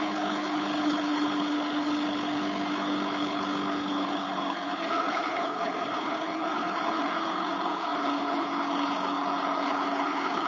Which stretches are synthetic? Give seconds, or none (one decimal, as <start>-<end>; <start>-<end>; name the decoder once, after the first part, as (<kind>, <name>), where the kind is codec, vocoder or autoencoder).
0.0-10.5 (codec, HILCodec)